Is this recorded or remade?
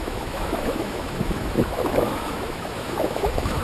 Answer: remade